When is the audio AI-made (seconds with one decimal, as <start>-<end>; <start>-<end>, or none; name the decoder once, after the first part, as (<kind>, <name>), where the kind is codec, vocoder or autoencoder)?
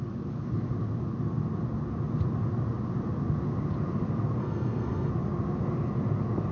4.4-5.1 (codec, SNAC)